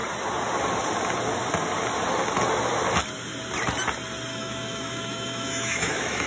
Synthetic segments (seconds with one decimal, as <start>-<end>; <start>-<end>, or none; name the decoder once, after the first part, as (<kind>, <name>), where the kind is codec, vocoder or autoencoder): 4.3-6.3 (autoencoder, DAC-VAE)